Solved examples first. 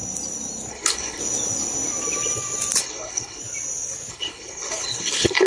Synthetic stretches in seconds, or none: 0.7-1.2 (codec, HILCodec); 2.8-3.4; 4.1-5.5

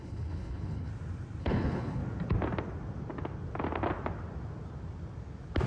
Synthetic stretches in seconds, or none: 0.0-0.9 (codec, HILCodec); 1.4-2.0